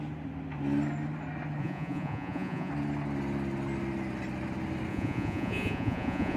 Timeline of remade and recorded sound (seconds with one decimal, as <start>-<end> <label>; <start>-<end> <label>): 0.0-1.6 recorded; 1.6-2.7 remade; 2.7-4.9 recorded; 4.9-6.4 remade